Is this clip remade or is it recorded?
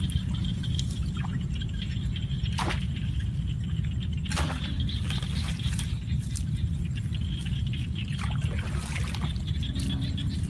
recorded